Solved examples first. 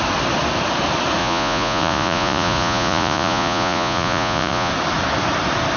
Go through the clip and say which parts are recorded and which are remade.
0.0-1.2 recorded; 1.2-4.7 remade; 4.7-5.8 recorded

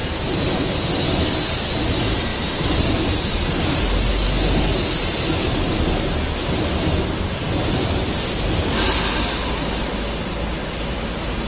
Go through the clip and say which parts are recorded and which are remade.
0.0-0.6 remade; 0.6-2.3 recorded; 2.3-3.6 remade; 3.6-11.5 recorded

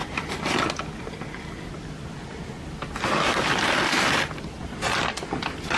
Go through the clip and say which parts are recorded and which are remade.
0.0-5.8 recorded

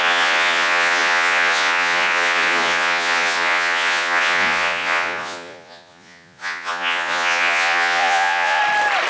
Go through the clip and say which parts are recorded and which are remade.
0.0-8.6 remade; 8.6-9.1 recorded

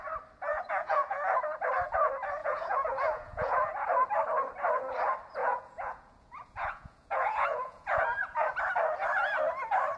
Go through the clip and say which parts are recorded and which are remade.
0.0-0.5 recorded; 0.5-1.4 remade; 1.4-2.4 recorded; 2.4-3.6 remade; 3.6-5.4 recorded; 5.4-8.5 remade; 8.5-10.0 recorded

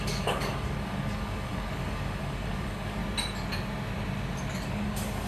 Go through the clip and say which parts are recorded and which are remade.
0.0-3.0 remade; 3.0-4.7 recorded; 4.7-5.3 remade